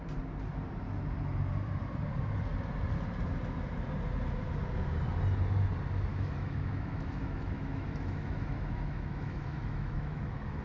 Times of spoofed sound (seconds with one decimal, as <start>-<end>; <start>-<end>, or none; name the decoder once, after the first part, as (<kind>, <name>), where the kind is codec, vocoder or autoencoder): 6.1-10.6 (autoencoder, DAC-VAE)